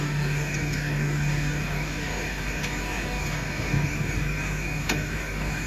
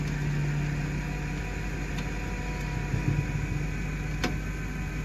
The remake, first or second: first